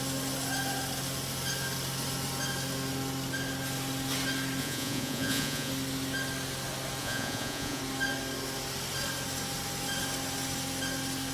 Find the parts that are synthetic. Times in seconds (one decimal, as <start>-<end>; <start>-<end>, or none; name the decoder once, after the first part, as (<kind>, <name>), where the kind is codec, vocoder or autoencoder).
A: 4.6-5.7 (vocoder, Vocos); 7.0-7.8

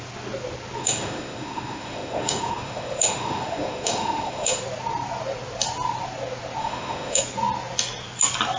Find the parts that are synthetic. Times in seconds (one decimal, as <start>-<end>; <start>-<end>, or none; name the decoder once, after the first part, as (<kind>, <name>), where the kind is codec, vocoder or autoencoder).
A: 0.8-4.6 (autoencoder, DAC-VAE); 6.6-7.2